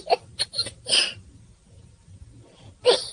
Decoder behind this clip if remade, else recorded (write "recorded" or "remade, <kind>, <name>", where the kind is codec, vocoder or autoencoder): recorded